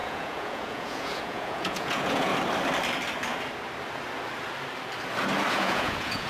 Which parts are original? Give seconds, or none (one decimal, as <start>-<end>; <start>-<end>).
2.3-5.5